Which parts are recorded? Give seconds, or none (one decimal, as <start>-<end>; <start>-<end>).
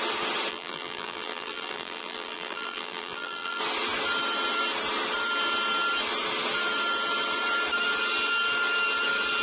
0.0-0.5; 3.6-9.4